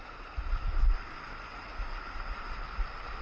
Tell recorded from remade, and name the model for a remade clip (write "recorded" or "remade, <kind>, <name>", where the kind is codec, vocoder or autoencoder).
recorded